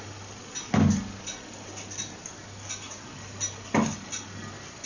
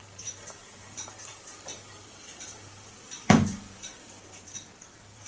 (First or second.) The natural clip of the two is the first